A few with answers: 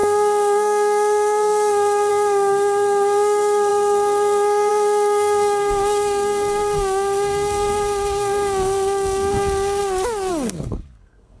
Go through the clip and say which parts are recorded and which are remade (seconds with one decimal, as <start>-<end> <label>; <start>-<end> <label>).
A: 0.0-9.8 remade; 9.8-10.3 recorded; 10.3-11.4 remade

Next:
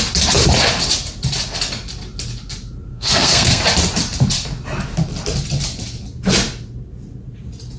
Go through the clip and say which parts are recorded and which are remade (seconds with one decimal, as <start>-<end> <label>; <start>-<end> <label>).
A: 0.0-2.9 recorded; 2.9-3.6 remade; 3.6-7.8 recorded

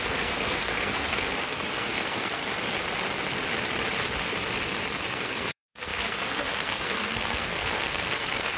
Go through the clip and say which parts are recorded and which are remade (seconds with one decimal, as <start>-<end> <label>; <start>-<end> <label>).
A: 0.0-2.4 remade; 2.4-5.1 recorded; 5.1-8.6 remade

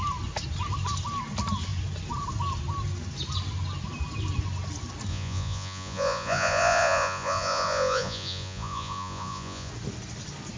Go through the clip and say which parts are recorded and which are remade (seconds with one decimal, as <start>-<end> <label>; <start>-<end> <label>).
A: 0.0-5.1 recorded; 5.1-9.7 remade; 9.7-10.6 recorded

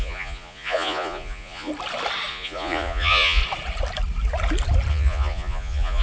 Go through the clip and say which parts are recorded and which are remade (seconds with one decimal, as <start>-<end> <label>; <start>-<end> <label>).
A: 0.0-1.7 remade; 1.7-2.3 recorded; 2.3-3.4 remade; 3.4-4.9 recorded; 4.9-6.0 remade